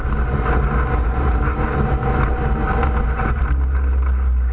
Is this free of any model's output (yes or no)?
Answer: yes